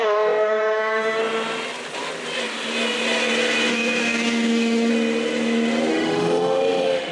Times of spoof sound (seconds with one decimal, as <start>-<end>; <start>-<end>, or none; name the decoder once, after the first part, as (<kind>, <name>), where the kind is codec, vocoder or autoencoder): 0.0-1.2 (autoencoder, DAC-VAE); 3.7-4.9; 5.9-7.1